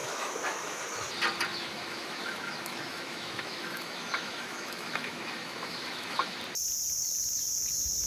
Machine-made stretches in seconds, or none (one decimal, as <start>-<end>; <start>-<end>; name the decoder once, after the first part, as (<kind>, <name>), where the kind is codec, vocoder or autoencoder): 0.0-0.8 (autoencoder, DAC-VAE); 1.5-6.4